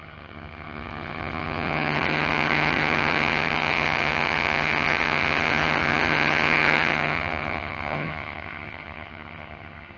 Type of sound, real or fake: fake